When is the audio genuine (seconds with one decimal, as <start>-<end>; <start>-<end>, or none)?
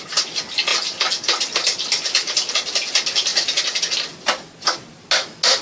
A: 0.0-5.6